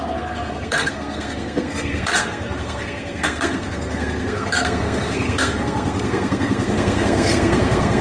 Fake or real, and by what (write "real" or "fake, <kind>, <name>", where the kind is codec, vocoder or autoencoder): fake, codec, SNAC